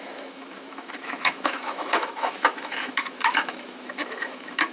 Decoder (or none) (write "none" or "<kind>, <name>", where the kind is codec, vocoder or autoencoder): autoencoder, DAC-VAE